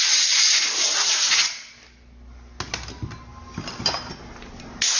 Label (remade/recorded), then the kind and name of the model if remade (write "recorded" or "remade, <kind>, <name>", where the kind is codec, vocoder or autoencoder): recorded